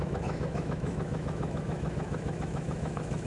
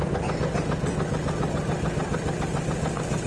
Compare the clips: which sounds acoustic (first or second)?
second